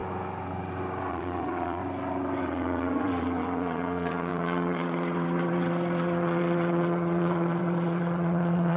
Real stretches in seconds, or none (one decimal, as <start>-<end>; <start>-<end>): 0.0-1.1; 1.8-2.4